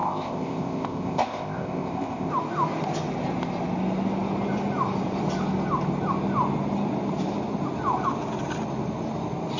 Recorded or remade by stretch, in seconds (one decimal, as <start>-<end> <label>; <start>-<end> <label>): 0.0-2.3 remade; 2.3-9.6 recorded